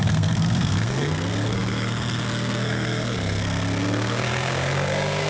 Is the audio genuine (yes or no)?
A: no